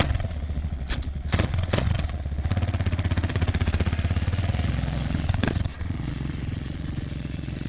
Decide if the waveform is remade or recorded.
remade